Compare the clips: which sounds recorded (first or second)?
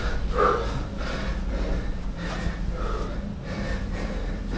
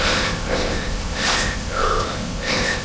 first